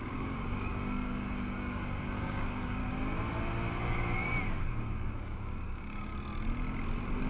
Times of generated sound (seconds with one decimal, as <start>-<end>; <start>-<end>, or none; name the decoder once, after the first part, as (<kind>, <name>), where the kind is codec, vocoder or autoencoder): 0.0-2.8 (codec, DAC); 4.6-6.1